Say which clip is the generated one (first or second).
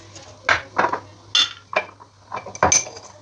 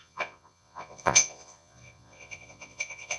second